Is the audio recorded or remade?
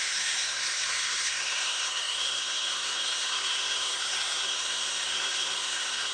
remade